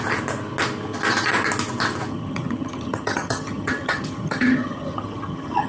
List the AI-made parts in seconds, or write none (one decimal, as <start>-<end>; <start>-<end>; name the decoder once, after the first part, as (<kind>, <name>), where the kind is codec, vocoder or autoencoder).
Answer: 2.1-5.7 (vocoder, HiFi-GAN)